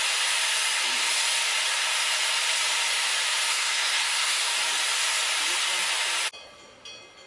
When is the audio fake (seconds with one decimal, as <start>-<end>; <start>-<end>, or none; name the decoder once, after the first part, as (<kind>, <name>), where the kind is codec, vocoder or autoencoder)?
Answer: 3.5-4.4 (codec, SNAC)